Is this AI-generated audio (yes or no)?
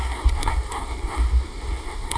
yes